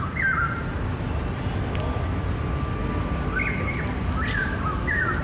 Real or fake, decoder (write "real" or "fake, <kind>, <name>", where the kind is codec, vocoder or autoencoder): real